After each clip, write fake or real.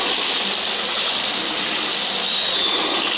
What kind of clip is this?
real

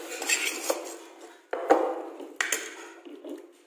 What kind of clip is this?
real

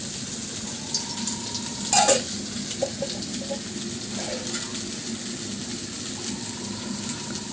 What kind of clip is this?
real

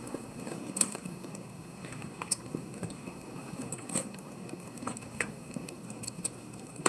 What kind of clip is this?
fake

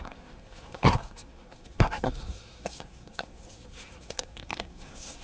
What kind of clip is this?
fake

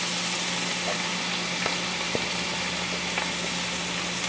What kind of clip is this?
real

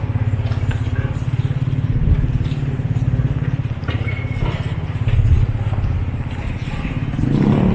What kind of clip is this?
real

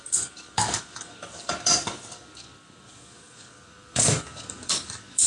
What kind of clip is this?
fake